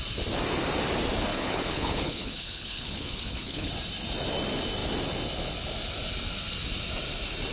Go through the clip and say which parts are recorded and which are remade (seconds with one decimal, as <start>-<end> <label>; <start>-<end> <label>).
0.0-1.3 recorded; 1.3-3.7 remade; 3.7-7.5 recorded